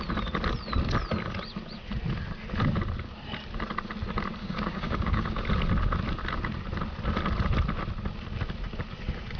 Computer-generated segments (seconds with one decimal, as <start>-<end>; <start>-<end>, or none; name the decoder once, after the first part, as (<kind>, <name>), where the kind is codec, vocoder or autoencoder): 4.4-5.4 (codec, DAC)